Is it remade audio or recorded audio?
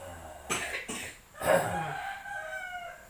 recorded